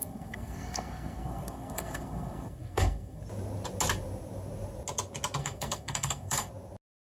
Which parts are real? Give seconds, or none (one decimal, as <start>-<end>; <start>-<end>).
3.2-5.4; 6.5-7.0